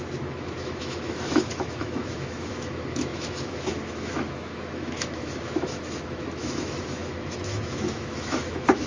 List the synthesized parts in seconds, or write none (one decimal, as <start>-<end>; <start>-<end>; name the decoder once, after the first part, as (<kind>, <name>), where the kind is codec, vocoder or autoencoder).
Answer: 0.0-8.9 (autoencoder, DAC-VAE)